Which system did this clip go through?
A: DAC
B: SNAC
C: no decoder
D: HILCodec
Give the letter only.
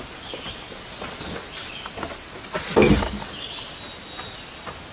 C